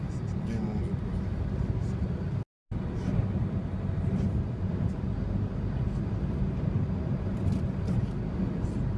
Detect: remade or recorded recorded